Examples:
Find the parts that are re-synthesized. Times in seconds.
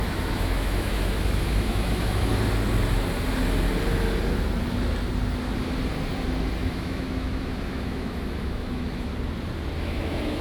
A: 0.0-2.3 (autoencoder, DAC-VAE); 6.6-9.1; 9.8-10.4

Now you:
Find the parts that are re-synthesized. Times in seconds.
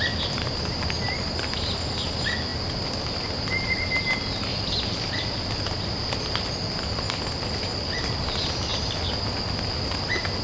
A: none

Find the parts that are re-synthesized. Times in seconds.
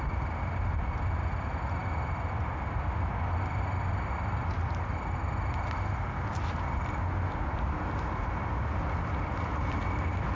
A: none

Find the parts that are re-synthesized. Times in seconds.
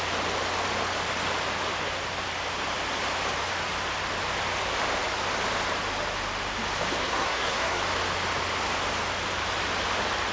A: 7.0-7.8 (codec, SNAC)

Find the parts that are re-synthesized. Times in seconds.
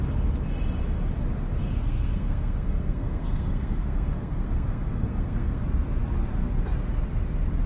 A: 1.6-5.6 (codec, SNAC)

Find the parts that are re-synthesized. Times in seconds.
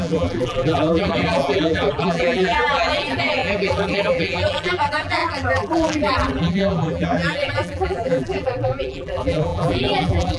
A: 0.0-10.4 (vocoder, BigVGAN v2)